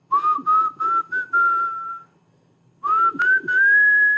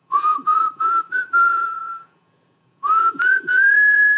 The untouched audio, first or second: first